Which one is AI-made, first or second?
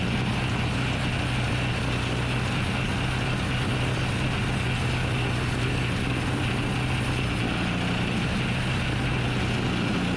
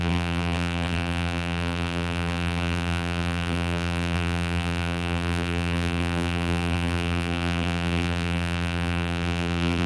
second